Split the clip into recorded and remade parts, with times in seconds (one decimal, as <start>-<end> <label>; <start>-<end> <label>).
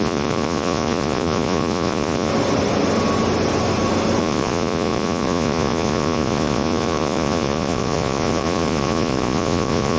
0.0-2.3 remade; 2.3-4.2 recorded; 4.2-10.0 remade